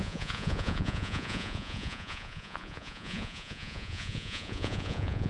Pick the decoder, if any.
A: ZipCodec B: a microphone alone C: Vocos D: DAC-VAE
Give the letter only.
C